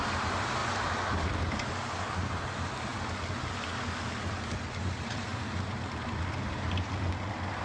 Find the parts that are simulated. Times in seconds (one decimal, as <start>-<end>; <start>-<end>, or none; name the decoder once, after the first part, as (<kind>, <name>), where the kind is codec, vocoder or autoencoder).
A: 0.0-0.6 (vocoder, BigVGAN v2); 2.1-2.9; 4.2-7.6